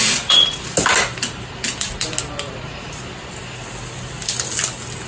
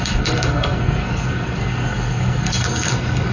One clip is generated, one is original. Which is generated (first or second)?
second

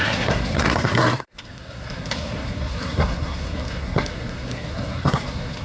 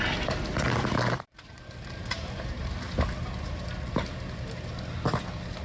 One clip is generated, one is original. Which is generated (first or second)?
first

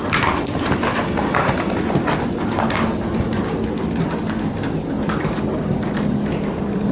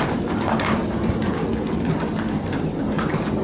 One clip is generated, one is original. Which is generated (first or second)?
second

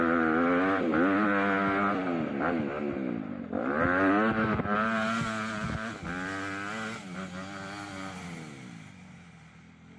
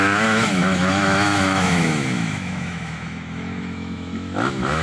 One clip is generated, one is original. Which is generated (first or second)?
second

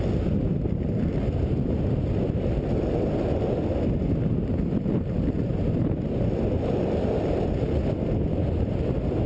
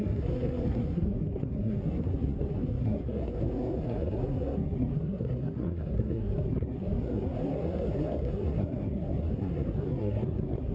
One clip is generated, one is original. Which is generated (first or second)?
second